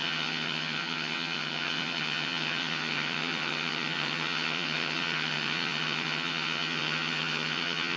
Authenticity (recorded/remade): remade